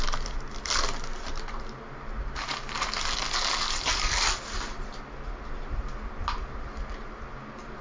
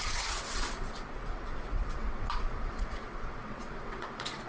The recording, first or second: first